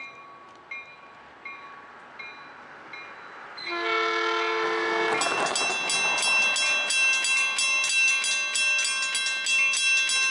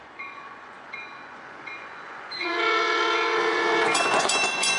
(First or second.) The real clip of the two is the first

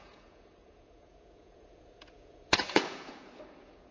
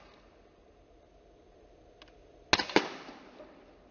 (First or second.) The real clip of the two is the second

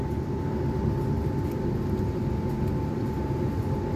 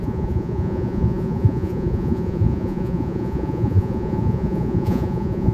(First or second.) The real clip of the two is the first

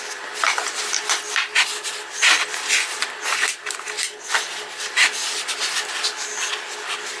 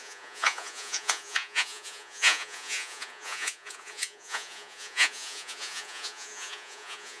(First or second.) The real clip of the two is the first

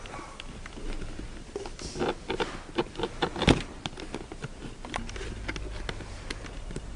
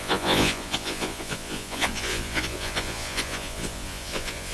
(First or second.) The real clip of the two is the first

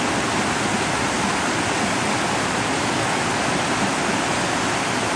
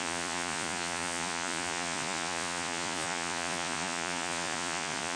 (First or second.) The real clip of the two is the first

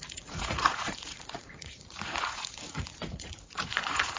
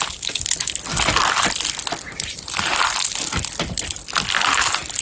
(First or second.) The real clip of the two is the second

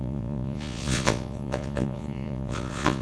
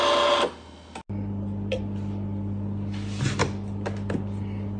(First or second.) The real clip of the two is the second